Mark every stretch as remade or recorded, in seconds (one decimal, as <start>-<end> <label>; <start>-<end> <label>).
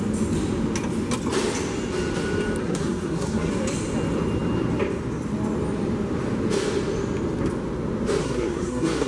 0.0-2.6 recorded; 2.6-3.5 remade; 3.5-8.2 recorded; 8.2-9.1 remade